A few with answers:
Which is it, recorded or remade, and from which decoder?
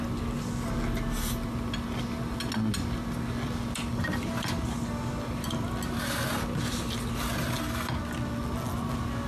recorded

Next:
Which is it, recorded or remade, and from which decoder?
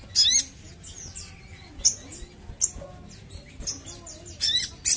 recorded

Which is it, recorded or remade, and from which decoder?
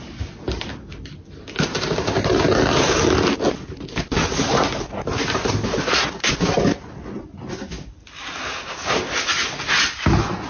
recorded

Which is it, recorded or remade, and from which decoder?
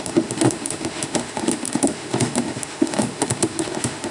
remade, autoencoder, DAC-VAE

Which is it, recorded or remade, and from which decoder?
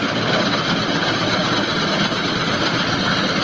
recorded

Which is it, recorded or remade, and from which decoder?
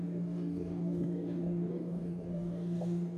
remade, codec, DAC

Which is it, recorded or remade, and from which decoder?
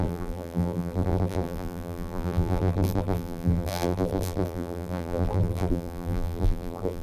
remade, vocoder, BigVGAN v2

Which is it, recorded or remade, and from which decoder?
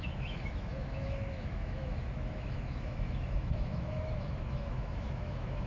remade, autoencoder, DAC-VAE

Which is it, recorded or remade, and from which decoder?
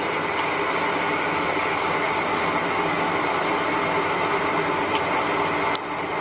recorded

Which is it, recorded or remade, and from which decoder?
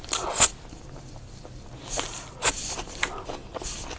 recorded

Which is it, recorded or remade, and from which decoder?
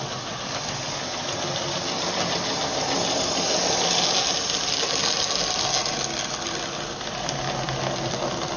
recorded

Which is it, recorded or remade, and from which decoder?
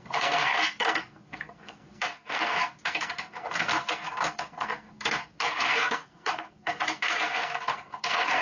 remade, codec, SNAC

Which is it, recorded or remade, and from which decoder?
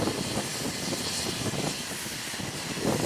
recorded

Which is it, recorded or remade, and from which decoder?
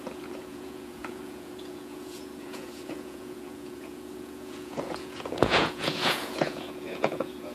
remade, vocoder, Vocos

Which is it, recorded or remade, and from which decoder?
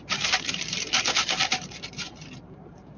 remade, vocoder, BigVGAN v2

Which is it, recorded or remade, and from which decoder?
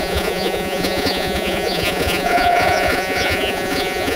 remade, vocoder, Vocos